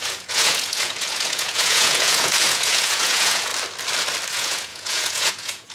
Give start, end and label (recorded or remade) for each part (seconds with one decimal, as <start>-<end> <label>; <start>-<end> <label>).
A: 0.0-3.5 remade; 3.5-4.3 recorded; 4.3-5.7 remade